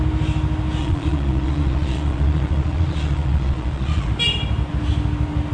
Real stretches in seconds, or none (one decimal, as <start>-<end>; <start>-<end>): 0.0-0.8; 4.1-5.5